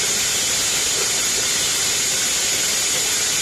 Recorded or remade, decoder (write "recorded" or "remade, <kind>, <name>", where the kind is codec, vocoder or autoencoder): recorded